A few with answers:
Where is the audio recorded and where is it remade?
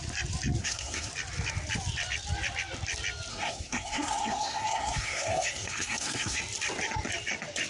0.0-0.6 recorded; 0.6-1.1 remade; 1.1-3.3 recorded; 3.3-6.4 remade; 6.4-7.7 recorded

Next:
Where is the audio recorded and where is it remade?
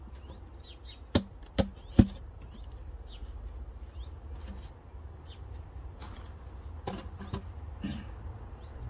0.0-8.9 recorded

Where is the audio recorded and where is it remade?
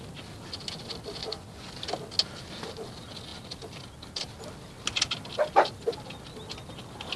0.0-1.2 recorded; 1.2-1.7 remade; 1.7-7.2 recorded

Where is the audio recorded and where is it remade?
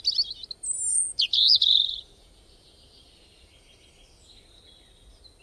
0.0-0.9 recorded; 0.9-2.3 remade; 2.3-5.4 recorded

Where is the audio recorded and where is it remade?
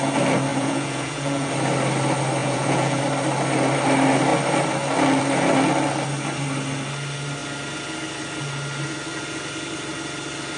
0.0-0.5 recorded; 0.5-1.5 remade; 1.5-2.4 recorded; 2.4-3.0 remade; 3.0-10.6 recorded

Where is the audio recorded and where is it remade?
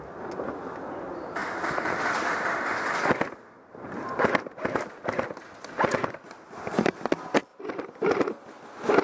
0.0-9.0 recorded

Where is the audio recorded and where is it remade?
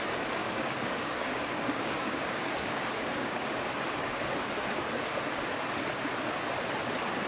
0.0-0.4 recorded; 0.4-3.5 remade; 3.5-7.3 recorded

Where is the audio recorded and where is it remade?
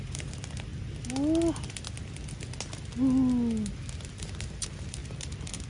0.0-0.7 remade; 0.7-4.1 recorded; 4.1-5.0 remade; 5.0-5.7 recorded